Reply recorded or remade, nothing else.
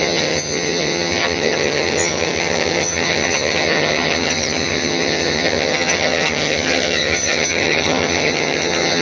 remade